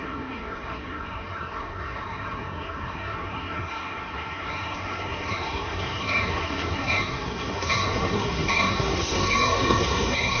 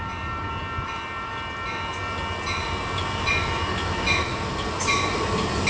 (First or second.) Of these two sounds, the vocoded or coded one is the first